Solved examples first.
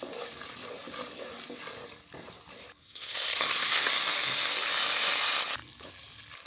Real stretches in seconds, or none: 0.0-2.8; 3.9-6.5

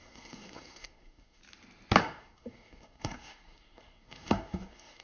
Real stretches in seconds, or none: 1.4-2.0

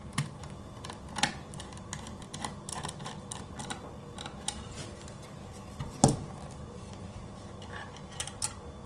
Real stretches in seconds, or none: 0.0-8.9

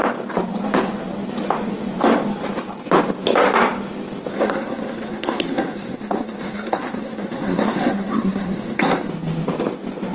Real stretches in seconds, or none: 0.0-4.3; 9.1-10.1

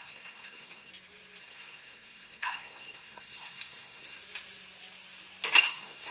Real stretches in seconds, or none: 0.9-1.4; 4.2-5.6

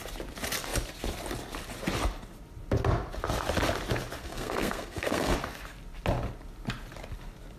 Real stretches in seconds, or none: 0.0-4.2; 5.3-7.6